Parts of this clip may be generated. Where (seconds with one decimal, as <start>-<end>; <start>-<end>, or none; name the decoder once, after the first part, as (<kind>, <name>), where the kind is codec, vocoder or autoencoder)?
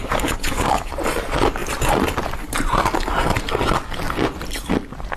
0.0-0.9 (codec, DAC)